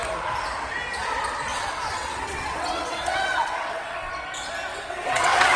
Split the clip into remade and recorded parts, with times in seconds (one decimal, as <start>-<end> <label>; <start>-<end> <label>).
0.0-1.5 recorded; 1.5-4.1 remade; 4.1-4.7 recorded; 4.7-5.6 remade